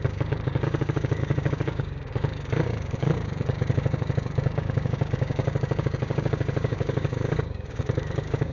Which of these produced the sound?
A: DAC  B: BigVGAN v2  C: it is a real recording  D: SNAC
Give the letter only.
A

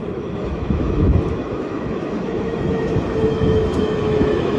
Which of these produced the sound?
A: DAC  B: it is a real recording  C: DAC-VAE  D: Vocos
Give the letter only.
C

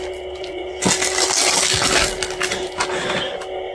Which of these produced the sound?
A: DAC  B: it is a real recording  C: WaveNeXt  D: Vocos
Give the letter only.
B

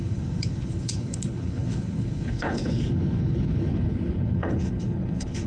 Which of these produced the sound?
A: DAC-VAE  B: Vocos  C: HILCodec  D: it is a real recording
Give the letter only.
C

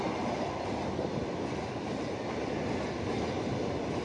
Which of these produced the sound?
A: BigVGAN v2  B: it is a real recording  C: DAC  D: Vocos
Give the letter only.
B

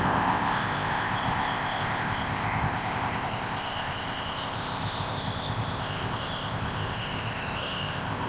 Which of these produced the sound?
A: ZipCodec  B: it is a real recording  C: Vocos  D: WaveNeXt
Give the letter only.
A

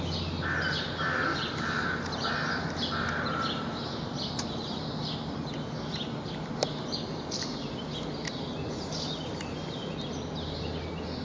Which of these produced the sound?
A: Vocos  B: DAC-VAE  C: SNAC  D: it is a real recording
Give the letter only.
D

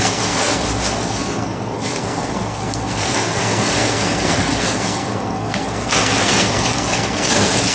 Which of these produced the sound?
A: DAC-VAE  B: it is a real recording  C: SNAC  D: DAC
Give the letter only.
C